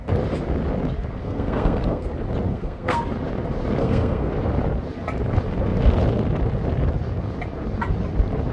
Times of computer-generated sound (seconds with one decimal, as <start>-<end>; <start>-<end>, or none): 1.2-2.1; 2.5-3.0; 3.8-4.3